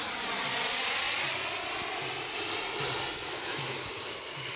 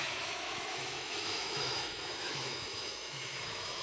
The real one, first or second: first